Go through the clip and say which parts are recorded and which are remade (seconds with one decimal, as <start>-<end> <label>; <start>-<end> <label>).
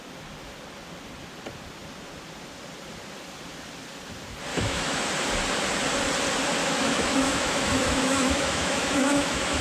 0.0-4.5 recorded; 4.5-5.1 remade; 5.1-6.6 recorded; 6.6-9.6 remade